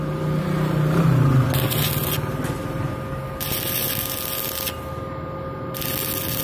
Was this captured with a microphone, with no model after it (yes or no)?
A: yes